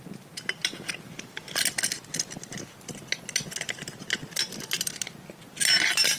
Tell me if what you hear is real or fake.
real